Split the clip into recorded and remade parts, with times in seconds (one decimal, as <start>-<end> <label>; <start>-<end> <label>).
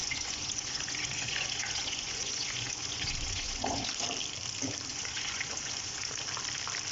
0.0-3.9 remade; 3.9-4.9 recorded; 4.9-6.1 remade; 6.1-6.9 recorded